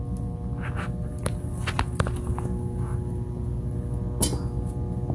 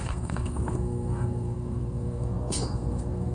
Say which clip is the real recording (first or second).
first